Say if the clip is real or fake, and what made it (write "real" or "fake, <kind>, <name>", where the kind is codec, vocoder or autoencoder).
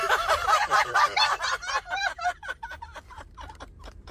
fake, vocoder, BigVGAN v2